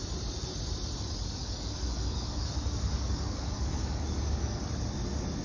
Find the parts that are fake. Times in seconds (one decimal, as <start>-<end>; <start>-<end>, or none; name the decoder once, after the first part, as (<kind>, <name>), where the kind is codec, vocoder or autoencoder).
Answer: 1.4-4.6 (codec, DAC)